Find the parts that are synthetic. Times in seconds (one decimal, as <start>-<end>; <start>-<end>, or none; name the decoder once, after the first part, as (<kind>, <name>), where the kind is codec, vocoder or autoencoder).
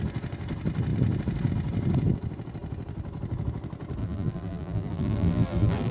4.0-5.9 (vocoder, BigVGAN v2)